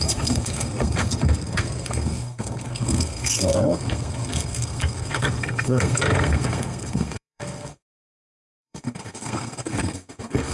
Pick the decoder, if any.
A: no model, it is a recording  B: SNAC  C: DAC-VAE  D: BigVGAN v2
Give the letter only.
B